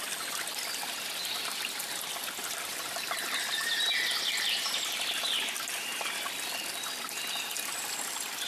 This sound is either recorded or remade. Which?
recorded